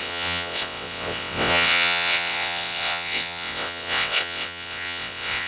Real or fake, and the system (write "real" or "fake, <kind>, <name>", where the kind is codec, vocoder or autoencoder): fake, vocoder, WaveNeXt